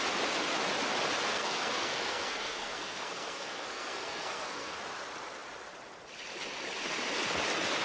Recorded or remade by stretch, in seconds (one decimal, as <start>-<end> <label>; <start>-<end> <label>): 0.0-1.3 recorded; 1.3-4.8 remade; 4.8-7.8 recorded